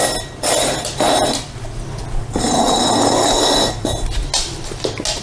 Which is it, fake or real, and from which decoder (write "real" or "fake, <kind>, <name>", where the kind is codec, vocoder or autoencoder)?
real